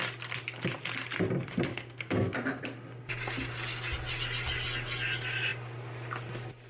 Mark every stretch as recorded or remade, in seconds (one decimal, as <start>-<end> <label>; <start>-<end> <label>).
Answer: 0.0-1.7 recorded; 1.7-2.6 remade; 2.6-6.7 recorded